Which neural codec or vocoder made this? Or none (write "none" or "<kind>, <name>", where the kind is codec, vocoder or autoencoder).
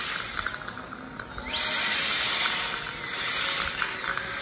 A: none